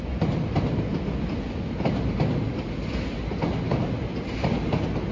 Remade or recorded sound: recorded